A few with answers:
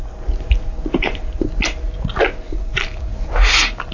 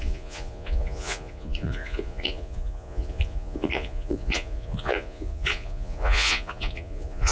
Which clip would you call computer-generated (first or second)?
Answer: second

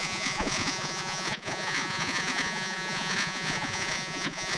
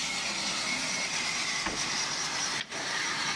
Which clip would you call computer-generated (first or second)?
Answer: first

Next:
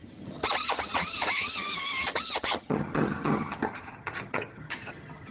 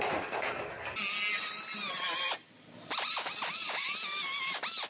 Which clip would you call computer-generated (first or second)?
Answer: first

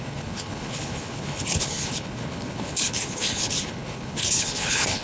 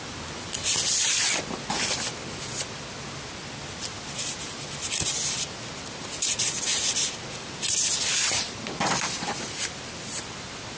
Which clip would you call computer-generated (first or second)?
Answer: first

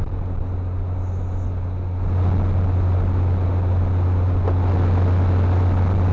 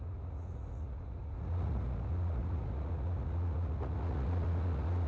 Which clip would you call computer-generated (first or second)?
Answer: second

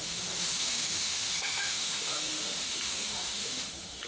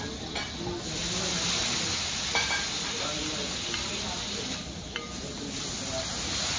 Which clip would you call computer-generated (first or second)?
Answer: first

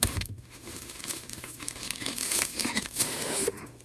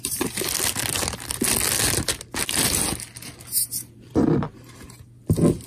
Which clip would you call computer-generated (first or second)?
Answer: first